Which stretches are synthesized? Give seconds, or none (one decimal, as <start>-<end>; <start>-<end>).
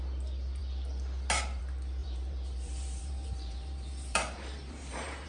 2.0-5.3